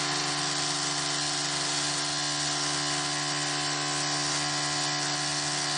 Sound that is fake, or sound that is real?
real